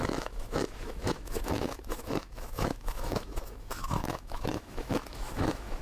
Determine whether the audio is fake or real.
fake